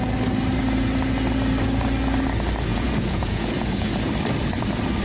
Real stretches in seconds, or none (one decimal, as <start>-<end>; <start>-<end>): 0.0-2.7; 4.1-5.0